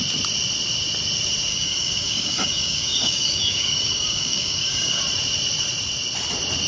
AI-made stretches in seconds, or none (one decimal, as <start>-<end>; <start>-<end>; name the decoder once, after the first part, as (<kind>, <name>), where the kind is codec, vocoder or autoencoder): 1.5-5.0 (codec, DAC)